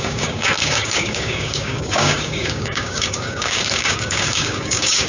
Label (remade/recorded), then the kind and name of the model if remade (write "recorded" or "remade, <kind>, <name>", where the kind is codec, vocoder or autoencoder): remade, codec, DAC